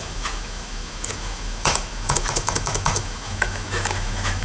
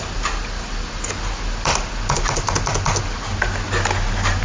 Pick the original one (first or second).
second